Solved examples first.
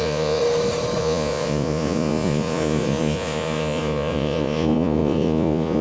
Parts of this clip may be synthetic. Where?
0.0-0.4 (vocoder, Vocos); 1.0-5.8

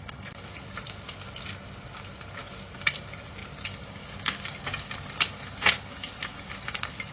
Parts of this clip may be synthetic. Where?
none

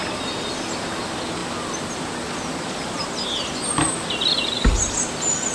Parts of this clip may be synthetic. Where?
none

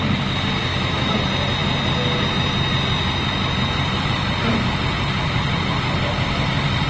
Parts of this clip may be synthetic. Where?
0.7-1.2 (autoencoder, DAC-VAE)

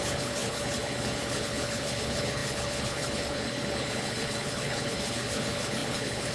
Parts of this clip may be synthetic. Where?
0.0-6.3 (codec, HILCodec)

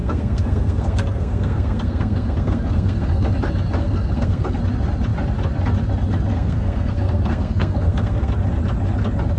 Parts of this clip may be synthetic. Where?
0.0-3.3 (codec, SNAC); 3.8-4.6; 6.3-8.3

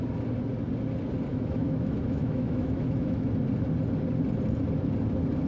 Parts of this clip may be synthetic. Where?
1.3-3.3 (autoencoder, DAC-VAE)